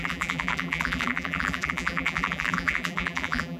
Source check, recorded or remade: remade